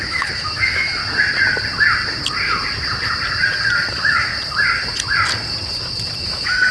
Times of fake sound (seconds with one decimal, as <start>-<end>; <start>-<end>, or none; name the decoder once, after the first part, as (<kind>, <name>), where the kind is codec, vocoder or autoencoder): 0.0-1.0 (autoencoder, DAC-VAE); 3.9-4.3; 6.2-6.7